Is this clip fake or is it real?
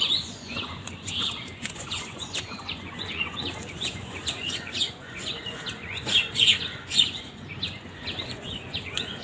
fake